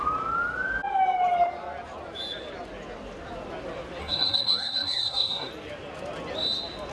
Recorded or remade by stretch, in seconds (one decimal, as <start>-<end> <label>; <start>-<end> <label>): 0.0-4.0 recorded; 4.0-5.5 remade; 5.5-6.9 recorded